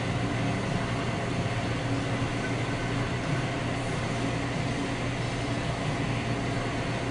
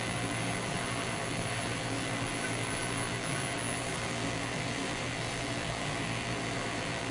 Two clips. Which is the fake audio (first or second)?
second